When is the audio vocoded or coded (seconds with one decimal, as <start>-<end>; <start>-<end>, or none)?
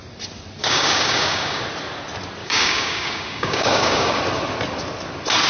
0.6-1.6; 2.4-4.2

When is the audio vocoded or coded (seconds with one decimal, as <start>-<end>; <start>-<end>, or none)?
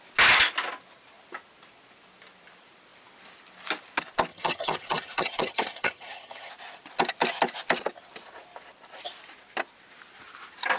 4.3-6.5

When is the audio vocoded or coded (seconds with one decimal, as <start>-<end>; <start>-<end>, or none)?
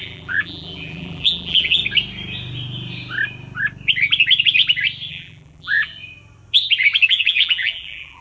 0.0-1.8; 5.1-5.9; 7.1-8.2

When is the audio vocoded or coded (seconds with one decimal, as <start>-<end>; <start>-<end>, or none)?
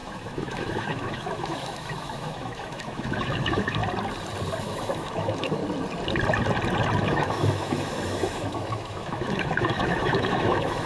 0.0-3.8; 4.6-5.6; 7.0-10.9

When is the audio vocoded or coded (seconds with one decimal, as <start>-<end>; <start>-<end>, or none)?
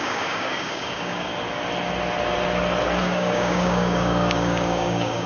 0.0-1.3; 3.0-5.3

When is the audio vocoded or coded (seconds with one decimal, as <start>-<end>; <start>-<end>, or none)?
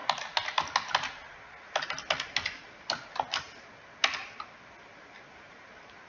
none